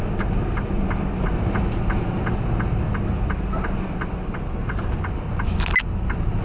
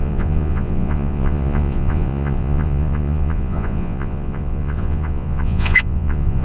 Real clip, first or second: first